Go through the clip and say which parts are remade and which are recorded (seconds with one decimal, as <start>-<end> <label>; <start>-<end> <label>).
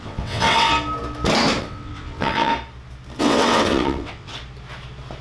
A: 0.0-0.7 remade; 0.7-1.6 recorded; 1.6-2.5 remade; 2.5-3.2 recorded; 3.2-4.3 remade; 4.3-5.2 recorded